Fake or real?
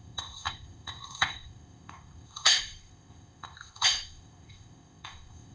fake